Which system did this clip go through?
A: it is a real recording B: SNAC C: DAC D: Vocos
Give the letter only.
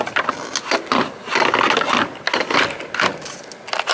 A